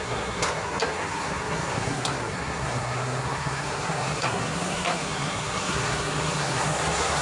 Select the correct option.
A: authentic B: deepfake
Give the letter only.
B